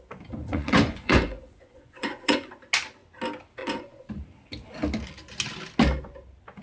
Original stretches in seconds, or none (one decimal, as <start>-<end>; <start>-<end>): 0.0-0.5; 2.5-3.6; 4.1-6.6